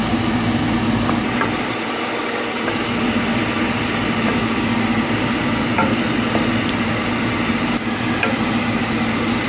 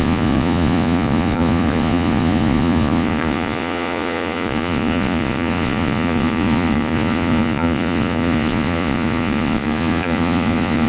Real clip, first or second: first